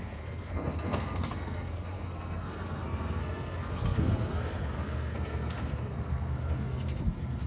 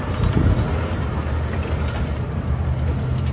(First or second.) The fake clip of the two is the first